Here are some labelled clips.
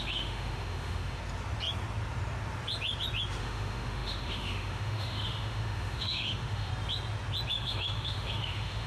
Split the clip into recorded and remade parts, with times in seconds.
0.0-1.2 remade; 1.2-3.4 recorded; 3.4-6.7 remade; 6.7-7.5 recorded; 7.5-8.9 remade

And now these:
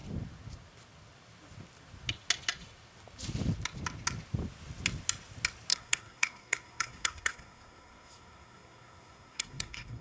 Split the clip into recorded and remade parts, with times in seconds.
0.0-5.7 recorded; 5.7-10.0 remade

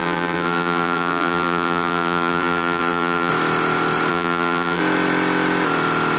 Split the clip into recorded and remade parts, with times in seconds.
0.0-3.3 remade; 3.3-4.1 recorded; 4.1-4.8 remade; 4.8-6.2 recorded

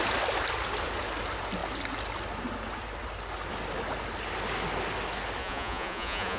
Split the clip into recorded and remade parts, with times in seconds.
0.0-5.4 recorded; 5.4-6.4 remade